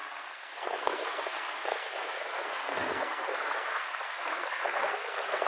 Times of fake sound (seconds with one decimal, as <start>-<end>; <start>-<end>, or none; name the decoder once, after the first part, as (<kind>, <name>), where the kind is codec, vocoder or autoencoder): 0.0-5.5 (codec, SNAC)